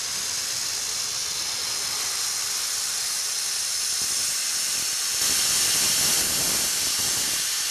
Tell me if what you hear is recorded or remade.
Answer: recorded